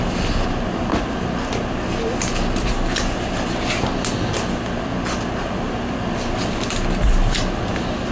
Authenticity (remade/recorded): recorded